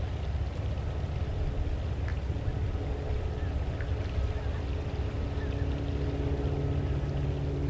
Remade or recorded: recorded